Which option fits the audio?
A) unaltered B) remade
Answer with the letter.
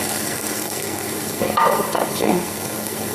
B